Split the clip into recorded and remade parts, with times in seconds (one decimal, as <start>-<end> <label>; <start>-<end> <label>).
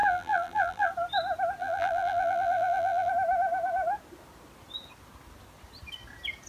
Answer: 0.0-0.9 remade; 0.9-1.6 recorded; 1.6-3.1 remade; 3.1-6.5 recorded